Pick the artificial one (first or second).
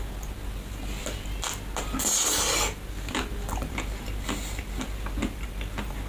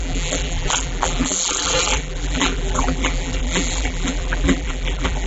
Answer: second